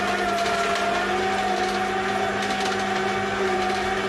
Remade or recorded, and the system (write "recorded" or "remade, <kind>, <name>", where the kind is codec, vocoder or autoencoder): recorded